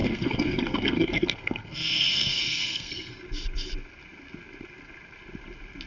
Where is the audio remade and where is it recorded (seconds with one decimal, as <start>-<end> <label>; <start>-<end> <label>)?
0.0-3.1 remade; 3.1-5.9 recorded